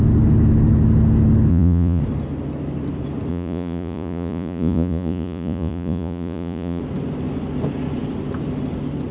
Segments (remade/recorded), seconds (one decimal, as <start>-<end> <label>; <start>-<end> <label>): 0.0-1.5 recorded; 1.5-2.0 remade; 2.0-3.3 recorded; 3.3-6.8 remade; 6.8-9.1 recorded